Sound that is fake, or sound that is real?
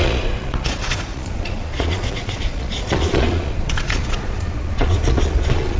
fake